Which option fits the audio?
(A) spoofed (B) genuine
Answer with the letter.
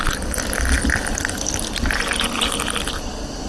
A